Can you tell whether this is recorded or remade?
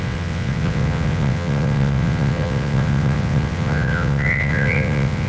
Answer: remade